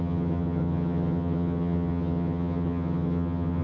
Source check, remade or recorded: remade